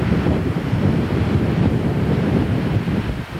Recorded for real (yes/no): no